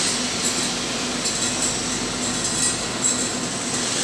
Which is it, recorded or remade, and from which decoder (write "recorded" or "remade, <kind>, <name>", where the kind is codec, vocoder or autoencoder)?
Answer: recorded